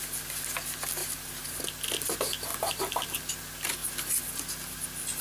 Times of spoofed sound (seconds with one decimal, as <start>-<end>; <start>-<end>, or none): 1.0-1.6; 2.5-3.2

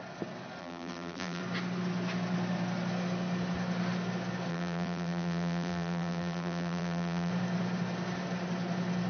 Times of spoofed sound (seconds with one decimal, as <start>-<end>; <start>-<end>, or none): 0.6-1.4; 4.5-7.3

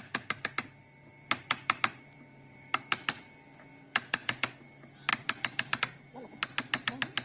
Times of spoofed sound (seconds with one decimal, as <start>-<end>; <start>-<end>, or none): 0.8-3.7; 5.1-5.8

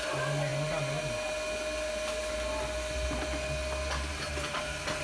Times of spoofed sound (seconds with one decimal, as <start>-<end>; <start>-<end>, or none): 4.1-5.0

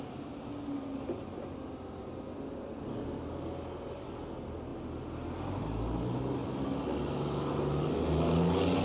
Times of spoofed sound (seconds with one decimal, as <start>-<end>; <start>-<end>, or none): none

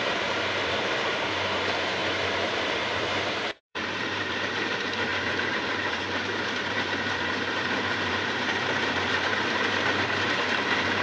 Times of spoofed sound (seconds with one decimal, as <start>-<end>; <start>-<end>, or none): 0.0-11.0